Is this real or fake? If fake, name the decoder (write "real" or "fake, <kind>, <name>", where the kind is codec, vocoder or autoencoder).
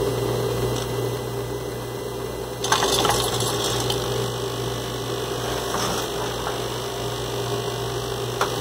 real